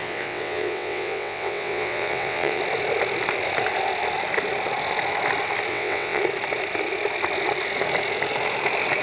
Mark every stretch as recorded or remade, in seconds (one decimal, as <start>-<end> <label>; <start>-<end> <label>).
0.0-2.6 remade; 2.6-5.7 recorded; 5.7-6.2 remade; 6.2-9.0 recorded